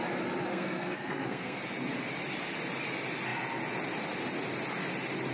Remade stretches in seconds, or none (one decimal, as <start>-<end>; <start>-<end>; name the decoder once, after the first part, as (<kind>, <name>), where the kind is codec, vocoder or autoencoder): 0.5-1.6 (codec, SNAC)